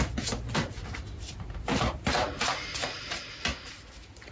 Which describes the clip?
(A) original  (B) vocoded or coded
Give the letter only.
A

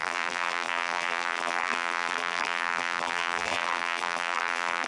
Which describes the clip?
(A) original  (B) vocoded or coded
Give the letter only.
B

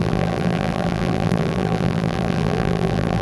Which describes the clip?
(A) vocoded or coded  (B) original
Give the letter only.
A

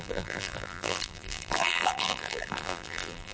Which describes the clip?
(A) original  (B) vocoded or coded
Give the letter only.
B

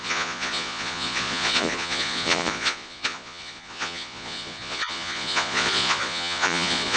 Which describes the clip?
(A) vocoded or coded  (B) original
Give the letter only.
A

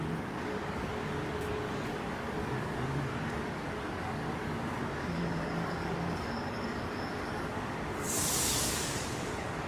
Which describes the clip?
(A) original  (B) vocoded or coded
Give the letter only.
B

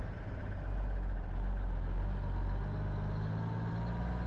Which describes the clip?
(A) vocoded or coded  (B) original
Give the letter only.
B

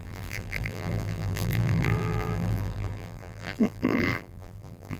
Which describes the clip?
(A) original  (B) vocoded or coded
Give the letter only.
B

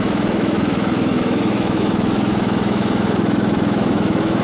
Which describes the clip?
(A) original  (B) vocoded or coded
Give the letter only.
B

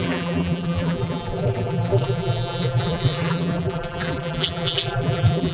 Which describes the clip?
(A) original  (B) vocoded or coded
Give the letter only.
B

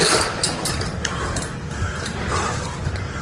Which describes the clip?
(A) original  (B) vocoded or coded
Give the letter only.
A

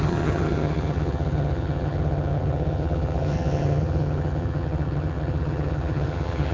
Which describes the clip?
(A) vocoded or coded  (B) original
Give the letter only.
A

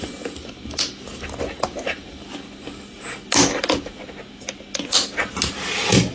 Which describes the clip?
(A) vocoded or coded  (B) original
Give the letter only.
B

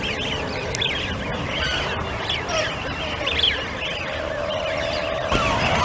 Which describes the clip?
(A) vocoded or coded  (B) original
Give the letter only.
B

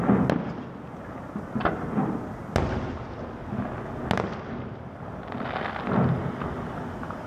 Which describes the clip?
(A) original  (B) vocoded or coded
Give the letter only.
A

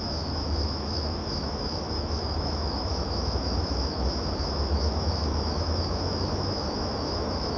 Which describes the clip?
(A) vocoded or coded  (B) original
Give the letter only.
A